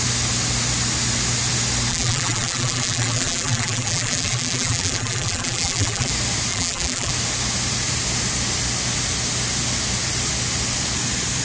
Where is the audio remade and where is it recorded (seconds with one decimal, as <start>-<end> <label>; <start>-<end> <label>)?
0.0-1.9 recorded; 1.9-6.1 remade; 6.1-6.5 recorded; 6.5-7.1 remade; 7.1-11.4 recorded